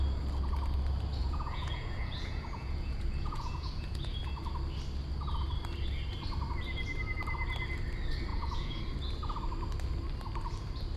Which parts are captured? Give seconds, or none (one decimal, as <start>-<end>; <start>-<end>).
0.0-1.2; 4.2-8.3; 8.8-11.0